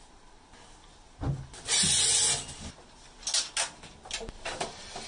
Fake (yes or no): no